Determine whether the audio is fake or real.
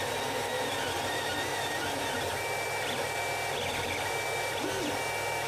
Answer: real